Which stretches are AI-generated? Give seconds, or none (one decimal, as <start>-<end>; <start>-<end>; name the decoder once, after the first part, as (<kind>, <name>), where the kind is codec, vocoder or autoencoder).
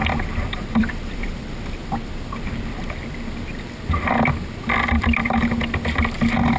0.0-1.3 (vocoder, BigVGAN v2); 1.8-5.8